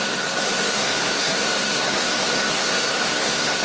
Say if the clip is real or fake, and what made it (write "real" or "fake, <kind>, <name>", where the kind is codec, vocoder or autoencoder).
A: fake, codec, SNAC